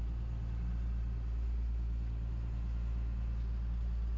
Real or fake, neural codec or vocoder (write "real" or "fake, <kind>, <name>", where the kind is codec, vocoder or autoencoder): real